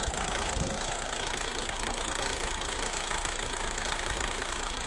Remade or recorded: remade